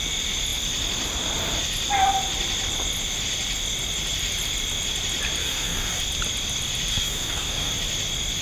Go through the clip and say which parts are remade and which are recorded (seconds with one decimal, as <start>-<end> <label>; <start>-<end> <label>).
0.0-5.4 recorded; 5.4-6.0 remade; 6.0-6.9 recorded; 6.9-7.7 remade; 7.7-8.4 recorded